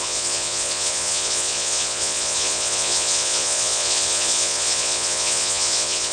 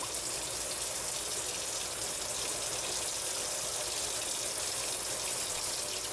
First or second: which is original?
second